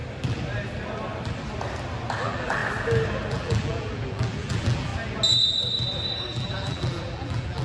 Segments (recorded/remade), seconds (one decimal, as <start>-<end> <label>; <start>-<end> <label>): 0.0-2.2 recorded; 2.2-2.6 remade; 2.6-3.3 recorded; 3.3-4.9 remade; 4.9-6.2 recorded; 6.2-7.6 remade